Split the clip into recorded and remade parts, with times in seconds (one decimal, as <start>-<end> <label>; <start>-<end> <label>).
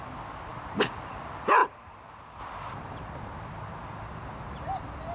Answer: 0.0-5.1 recorded